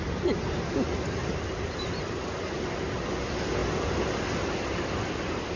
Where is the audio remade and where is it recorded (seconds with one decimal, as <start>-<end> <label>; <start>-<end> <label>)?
0.0-1.2 recorded; 1.2-2.4 remade; 2.4-5.6 recorded